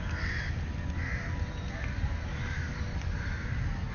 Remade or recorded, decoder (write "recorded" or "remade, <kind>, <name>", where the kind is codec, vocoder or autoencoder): recorded